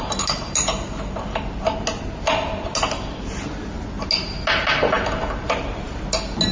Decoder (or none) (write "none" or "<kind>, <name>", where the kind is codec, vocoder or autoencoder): none